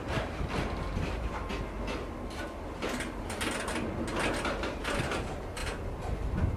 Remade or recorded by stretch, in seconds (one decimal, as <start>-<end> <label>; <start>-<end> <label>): 0.0-1.5 remade; 1.5-4.8 recorded; 4.8-5.6 remade; 5.6-6.6 recorded